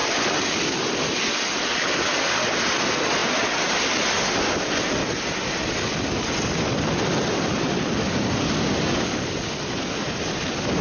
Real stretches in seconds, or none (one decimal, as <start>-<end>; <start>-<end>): 0.0-10.8